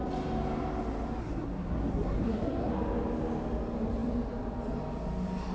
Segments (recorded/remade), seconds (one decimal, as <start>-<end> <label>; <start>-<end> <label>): 0.0-1.2 recorded; 1.2-2.7 remade; 2.7-5.5 recorded